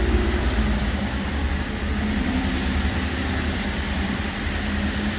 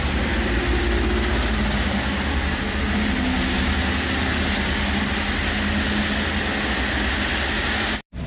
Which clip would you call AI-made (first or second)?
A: first